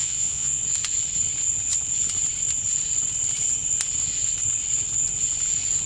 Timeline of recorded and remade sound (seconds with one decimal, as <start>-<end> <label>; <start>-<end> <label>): 0.0-0.6 remade; 0.6-5.9 recorded